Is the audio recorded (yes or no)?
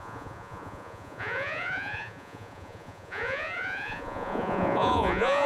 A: no